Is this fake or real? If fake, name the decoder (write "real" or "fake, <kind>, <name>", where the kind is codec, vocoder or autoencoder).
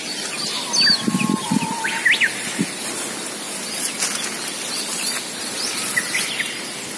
real